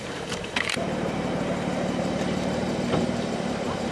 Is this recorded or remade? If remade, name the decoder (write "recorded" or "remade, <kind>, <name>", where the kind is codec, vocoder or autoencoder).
remade, vocoder, BigVGAN v2